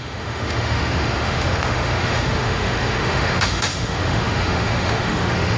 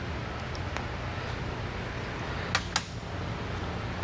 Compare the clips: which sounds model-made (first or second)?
first